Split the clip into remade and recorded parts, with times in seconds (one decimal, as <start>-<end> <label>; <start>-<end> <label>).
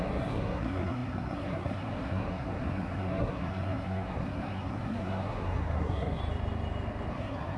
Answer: 0.0-6.2 remade; 6.2-7.1 recorded; 7.1-7.6 remade